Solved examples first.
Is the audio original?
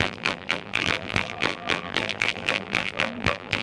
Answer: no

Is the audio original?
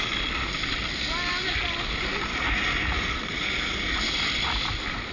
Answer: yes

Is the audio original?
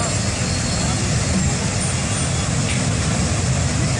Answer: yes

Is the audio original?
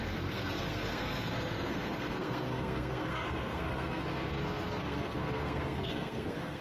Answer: no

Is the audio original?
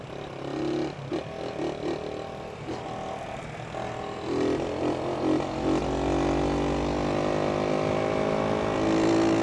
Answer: yes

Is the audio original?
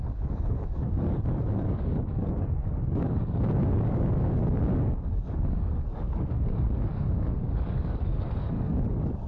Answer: no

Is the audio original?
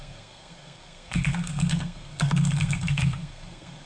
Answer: no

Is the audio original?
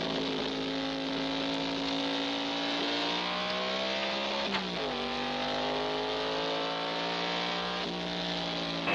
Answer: yes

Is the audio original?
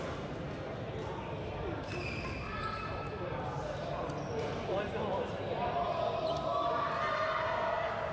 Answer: yes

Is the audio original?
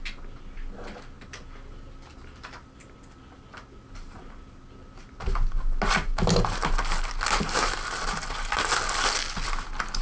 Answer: yes